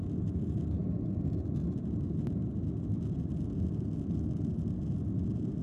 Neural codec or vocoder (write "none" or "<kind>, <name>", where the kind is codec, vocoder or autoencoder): none